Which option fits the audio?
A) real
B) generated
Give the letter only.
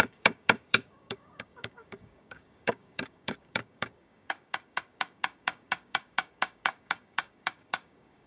B